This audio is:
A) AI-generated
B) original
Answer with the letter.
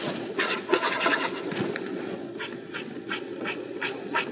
A